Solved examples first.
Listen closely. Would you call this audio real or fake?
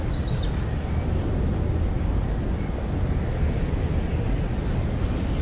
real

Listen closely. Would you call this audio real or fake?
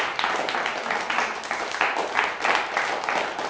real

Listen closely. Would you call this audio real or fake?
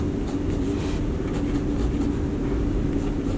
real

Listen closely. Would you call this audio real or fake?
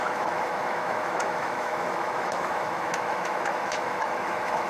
fake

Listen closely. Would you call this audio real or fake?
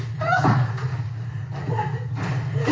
real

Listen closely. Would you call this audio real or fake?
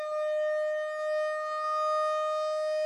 real